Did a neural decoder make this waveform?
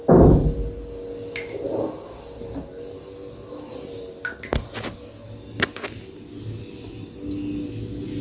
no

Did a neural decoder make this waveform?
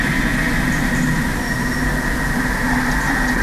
no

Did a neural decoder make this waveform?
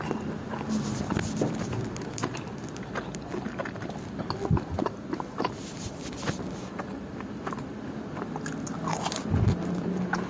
no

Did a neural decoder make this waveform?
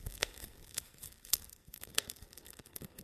yes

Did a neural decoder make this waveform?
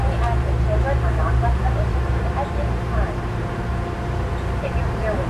yes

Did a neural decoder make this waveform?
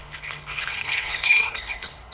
yes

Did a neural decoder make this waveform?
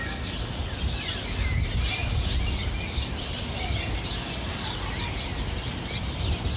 no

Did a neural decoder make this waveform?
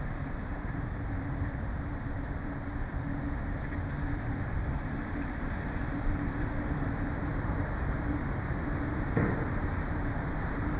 yes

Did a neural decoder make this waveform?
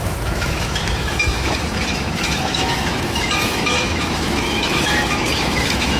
yes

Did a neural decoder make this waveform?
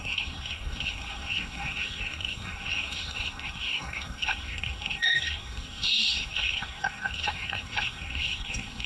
yes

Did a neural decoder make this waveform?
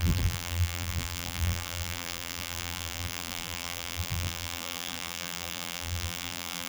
yes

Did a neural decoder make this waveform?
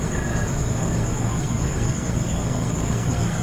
yes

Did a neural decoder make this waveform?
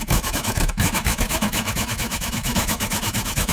yes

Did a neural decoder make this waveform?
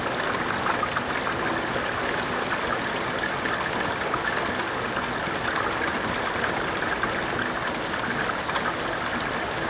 no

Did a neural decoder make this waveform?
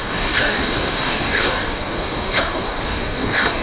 yes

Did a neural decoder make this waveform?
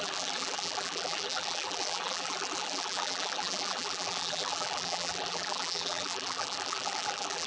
yes